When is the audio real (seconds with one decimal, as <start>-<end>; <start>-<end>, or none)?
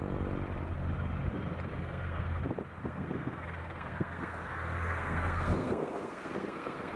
0.0-1.7; 2.4-2.8